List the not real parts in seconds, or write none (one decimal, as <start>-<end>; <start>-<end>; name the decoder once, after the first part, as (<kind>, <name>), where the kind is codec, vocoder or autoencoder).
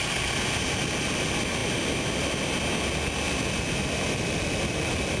none